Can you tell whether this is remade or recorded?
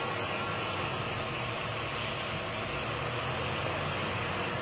recorded